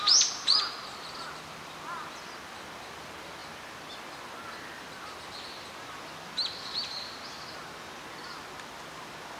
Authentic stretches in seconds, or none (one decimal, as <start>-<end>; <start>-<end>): 0.0-9.4